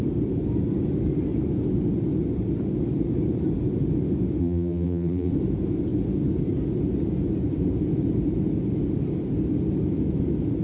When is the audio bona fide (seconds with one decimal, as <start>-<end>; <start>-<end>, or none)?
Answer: 0.0-4.4; 5.3-10.6